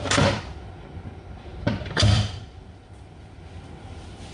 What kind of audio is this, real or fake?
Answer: fake